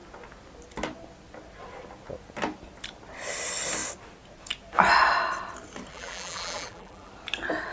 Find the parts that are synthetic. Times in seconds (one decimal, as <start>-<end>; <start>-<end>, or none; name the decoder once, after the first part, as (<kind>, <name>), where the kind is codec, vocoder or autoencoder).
5.9-7.1 (vocoder, BigVGAN v2)